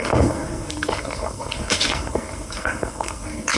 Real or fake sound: fake